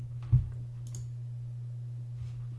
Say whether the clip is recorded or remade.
recorded